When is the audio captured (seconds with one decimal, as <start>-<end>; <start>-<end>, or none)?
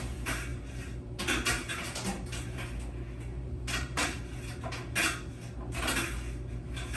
0.0-0.5; 1.2-3.3; 4.2-7.0